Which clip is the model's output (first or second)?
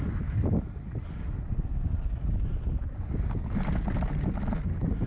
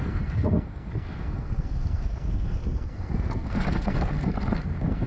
second